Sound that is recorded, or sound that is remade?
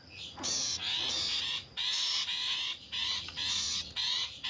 remade